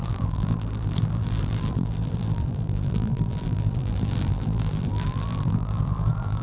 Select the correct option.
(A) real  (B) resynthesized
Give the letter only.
B